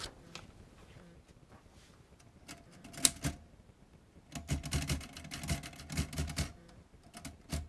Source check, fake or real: real